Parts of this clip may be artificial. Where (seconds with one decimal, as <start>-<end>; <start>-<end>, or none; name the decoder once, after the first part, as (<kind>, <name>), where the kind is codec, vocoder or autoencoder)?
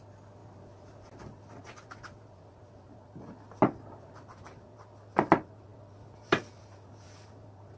none